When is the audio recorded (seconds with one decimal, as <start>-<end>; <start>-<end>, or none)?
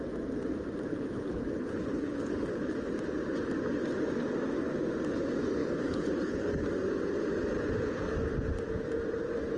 0.0-0.9; 2.8-5.6; 6.6-9.6